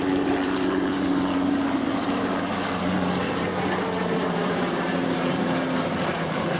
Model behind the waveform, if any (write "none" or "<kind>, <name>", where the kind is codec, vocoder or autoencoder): vocoder, BigVGAN v2